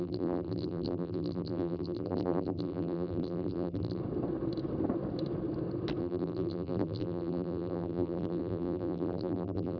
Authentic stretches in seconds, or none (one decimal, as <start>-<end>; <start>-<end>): 4.0-6.0